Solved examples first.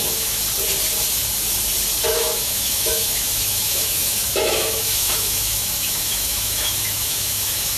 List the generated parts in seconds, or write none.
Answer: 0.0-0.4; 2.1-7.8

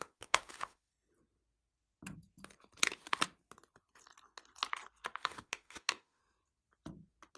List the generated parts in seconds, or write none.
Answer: 0.0-0.9; 5.2-6.2

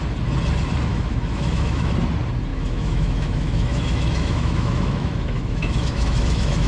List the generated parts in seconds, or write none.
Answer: 0.9-1.9; 2.5-6.7

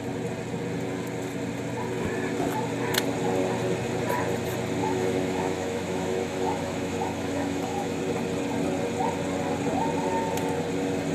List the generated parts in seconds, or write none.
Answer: 4.8-8.0

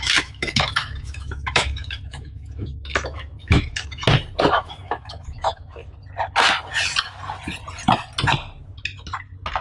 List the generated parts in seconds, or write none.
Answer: 0.0-4.0; 4.5-5.8

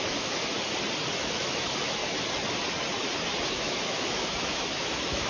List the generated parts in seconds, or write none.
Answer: 0.0-0.4; 1.1-2.0; 3.5-5.3